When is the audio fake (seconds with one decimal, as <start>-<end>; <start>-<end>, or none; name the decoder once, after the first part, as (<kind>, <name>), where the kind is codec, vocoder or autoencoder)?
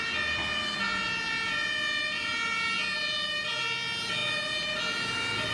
none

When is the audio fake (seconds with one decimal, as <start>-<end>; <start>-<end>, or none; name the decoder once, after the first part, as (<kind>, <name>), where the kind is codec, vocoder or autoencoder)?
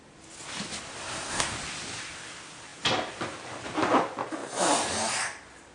1.0-1.5 (codec, SNAC)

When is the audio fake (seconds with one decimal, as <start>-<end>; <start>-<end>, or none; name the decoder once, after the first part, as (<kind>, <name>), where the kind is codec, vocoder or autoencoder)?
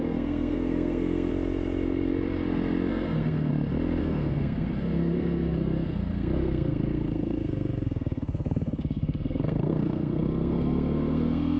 0.0-1.3 (codec, SNAC); 2.9-3.5; 4.0-11.6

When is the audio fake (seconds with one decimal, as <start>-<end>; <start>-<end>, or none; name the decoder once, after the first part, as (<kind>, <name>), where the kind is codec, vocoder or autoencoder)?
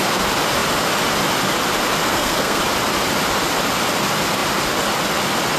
2.0-2.6 (codec, SNAC)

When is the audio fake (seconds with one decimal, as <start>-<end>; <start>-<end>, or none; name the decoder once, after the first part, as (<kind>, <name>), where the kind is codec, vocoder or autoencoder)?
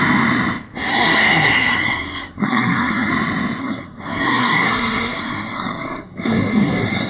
0.9-3.1 (codec, SNAC); 3.6-7.1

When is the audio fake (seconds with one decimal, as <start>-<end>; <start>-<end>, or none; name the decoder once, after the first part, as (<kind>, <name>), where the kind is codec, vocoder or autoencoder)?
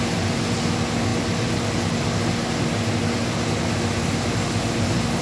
none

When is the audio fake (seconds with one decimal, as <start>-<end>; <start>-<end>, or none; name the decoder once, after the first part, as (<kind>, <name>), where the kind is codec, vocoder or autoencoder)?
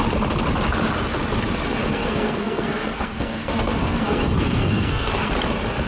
1.8-5.3 (codec, SNAC)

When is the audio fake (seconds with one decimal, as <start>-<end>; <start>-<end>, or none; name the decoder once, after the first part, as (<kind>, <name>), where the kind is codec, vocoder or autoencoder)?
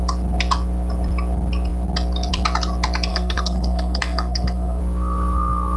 3.1-4.8 (codec, SNAC)